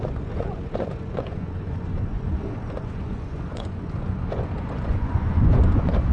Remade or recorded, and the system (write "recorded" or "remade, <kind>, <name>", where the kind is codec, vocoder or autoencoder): remade, vocoder, Vocos